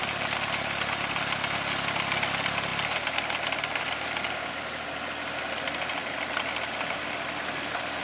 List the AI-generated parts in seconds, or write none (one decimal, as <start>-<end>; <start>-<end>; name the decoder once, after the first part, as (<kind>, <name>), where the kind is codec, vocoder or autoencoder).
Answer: none